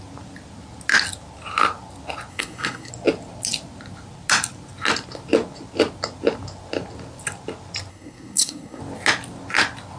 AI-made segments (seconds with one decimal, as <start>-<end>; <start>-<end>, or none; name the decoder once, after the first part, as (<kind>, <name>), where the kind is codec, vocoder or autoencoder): 2.3-2.9 (codec, SNAC); 7.9-8.8